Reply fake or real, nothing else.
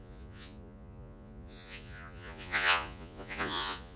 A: fake